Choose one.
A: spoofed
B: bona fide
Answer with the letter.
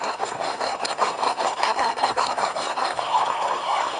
A